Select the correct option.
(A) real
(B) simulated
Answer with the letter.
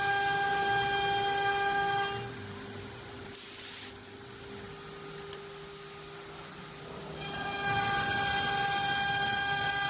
A